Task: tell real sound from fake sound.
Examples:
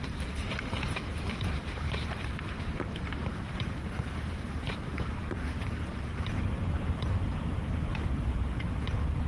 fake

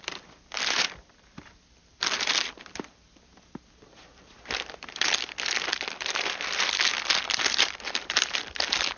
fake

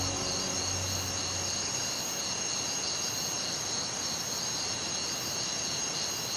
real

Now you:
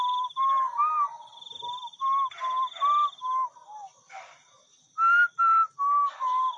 real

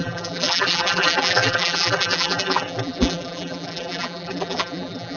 fake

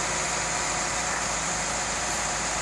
fake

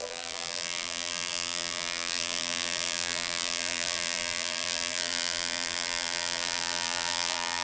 fake